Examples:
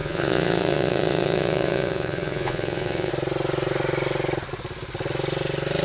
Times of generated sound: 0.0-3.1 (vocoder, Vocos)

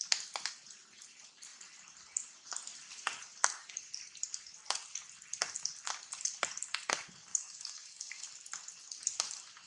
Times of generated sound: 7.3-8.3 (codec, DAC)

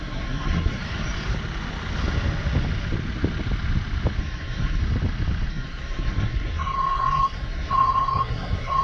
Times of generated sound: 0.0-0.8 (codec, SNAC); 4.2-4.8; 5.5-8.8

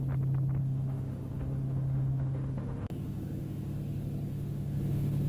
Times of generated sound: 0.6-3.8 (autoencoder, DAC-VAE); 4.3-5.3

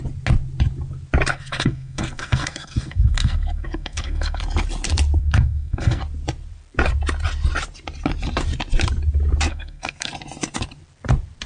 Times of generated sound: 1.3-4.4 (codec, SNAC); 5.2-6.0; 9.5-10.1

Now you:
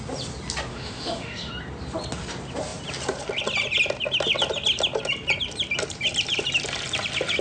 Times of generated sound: 0.7-1.5 (autoencoder, DAC-VAE)

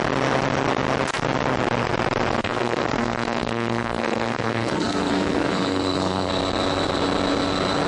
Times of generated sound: 2.4-6.3 (codec, SNAC)

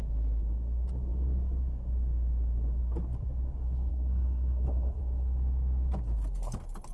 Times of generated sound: 3.9-5.0 (codec, SNAC)